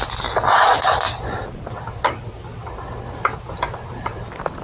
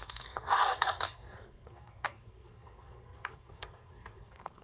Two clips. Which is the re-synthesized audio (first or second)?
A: second